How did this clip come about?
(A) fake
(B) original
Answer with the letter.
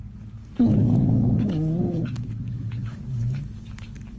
A